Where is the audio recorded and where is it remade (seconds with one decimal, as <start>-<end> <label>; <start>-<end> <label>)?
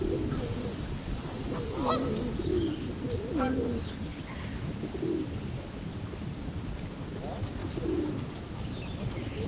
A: 0.0-9.5 recorded